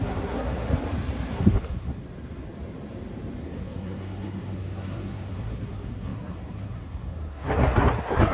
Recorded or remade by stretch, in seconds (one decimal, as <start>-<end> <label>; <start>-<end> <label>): 0.0-0.7 remade; 0.7-1.3 recorded; 1.3-2.0 remade; 2.0-3.4 recorded; 3.4-8.3 remade